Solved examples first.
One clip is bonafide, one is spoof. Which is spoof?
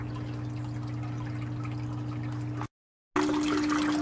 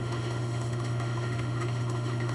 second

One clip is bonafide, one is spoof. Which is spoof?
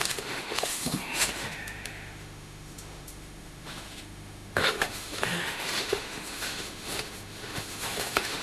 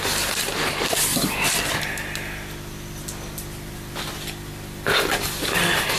first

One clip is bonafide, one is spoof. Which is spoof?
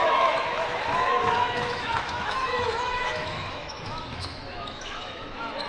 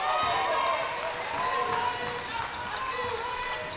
first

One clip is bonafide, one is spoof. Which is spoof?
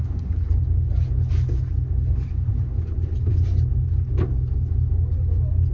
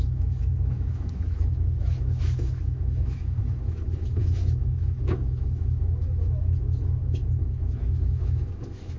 second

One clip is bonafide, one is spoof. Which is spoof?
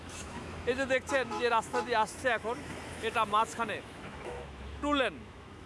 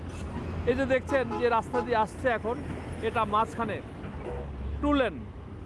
first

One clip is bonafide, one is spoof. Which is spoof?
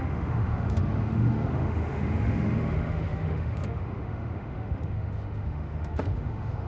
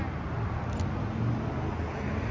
first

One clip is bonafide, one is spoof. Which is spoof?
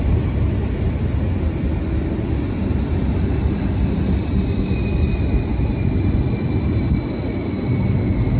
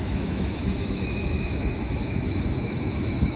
second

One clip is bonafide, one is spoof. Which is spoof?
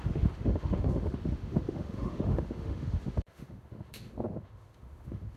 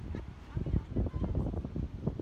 first